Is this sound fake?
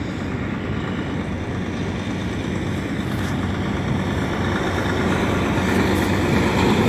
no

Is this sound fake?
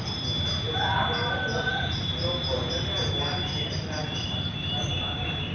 yes